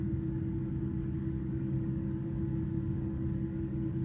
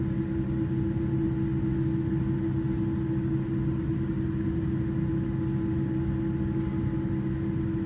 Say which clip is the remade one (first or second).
first